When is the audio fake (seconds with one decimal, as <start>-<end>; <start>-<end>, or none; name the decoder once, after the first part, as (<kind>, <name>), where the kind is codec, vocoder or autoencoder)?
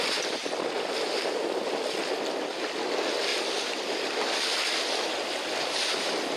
none